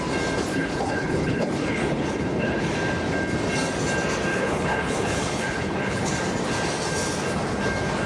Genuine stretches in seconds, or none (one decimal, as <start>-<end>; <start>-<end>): 0.0-0.5; 2.7-4.3; 6.1-8.1